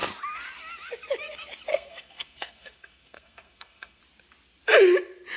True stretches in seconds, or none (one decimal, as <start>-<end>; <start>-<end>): 0.0-1.7; 4.0-5.4

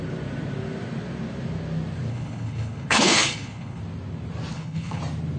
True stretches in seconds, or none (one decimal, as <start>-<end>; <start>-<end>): 0.0-2.1; 3.8-4.5; 5.0-5.4

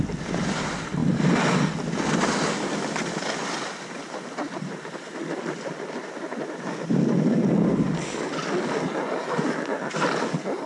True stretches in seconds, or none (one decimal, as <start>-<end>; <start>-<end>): 0.0-10.7

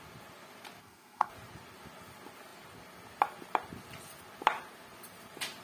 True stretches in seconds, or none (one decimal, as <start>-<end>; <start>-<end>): 0.0-0.8; 1.3-5.6

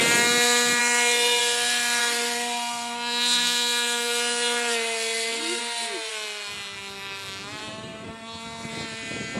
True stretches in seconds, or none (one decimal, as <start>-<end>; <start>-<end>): 0.0-0.8; 1.4-2.0; 5.6-6.1; 8.7-9.4

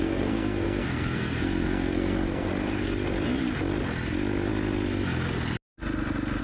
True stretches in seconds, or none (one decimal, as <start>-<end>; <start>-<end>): 2.5-6.4

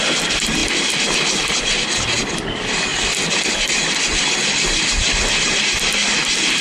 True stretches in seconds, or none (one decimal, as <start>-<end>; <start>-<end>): 0.0-6.6